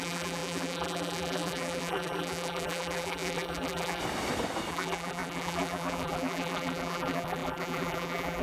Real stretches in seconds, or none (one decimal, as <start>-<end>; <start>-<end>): 4.0-4.7